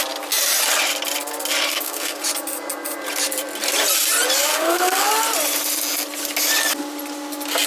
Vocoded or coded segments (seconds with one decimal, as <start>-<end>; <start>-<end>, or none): 1.7-2.2; 4.5-5.1